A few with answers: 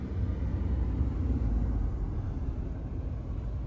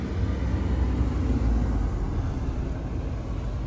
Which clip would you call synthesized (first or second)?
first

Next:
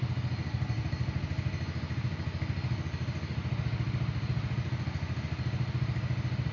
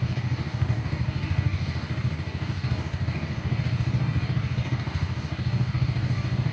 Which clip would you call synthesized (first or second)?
second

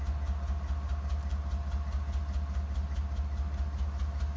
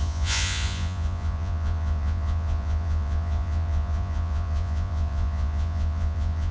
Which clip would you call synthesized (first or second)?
second